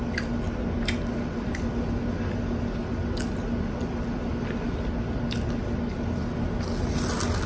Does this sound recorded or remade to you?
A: recorded